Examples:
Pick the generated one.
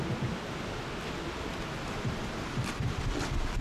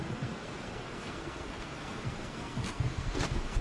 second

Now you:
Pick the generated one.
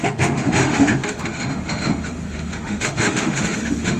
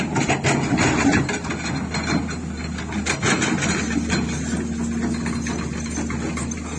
first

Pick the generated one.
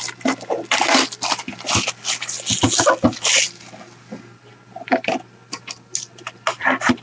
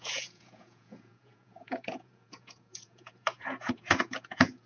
second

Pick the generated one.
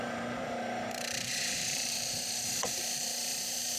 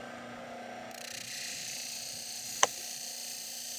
first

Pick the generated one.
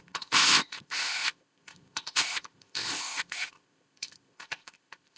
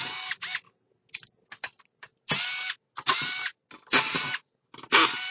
first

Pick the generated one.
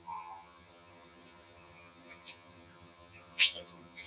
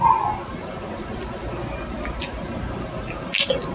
first